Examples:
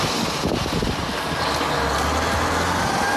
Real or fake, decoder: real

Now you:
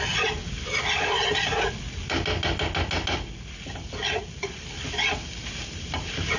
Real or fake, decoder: real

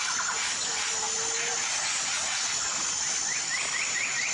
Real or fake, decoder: real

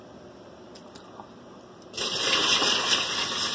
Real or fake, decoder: real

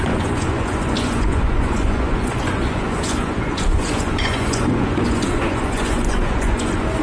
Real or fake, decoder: fake, vocoder, Vocos